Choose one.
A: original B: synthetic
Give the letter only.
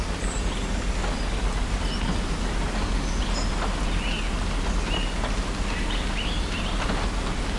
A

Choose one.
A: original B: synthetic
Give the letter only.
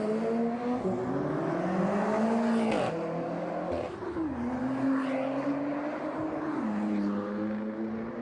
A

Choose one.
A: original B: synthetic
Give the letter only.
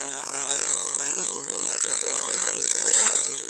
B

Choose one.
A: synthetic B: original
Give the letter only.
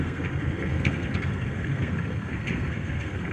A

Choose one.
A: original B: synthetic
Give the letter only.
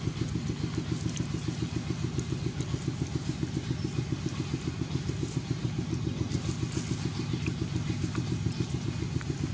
A